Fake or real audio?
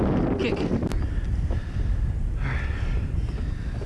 real